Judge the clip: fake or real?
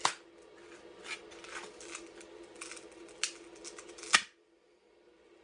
real